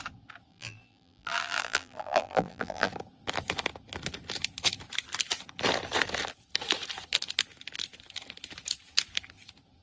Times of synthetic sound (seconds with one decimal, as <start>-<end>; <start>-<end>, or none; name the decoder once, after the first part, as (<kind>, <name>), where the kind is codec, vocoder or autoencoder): 0.5-2.9 (vocoder, BigVGAN v2)